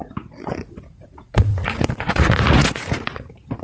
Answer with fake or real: fake